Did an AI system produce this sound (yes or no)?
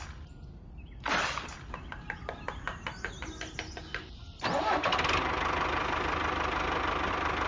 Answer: no